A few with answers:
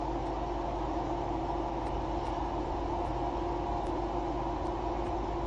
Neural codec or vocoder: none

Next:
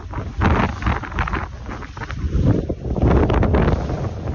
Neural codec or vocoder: none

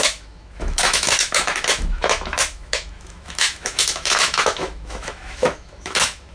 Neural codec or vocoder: autoencoder, DAC-VAE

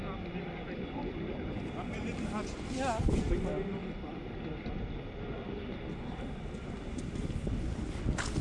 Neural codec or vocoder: none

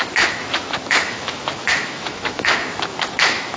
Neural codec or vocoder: autoencoder, DAC-VAE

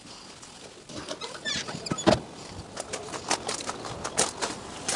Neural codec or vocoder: none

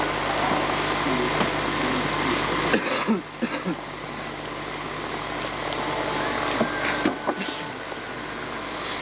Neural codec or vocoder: none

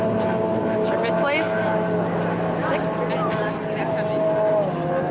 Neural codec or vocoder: none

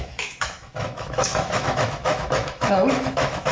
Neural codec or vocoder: autoencoder, DAC-VAE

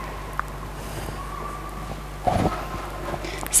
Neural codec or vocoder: none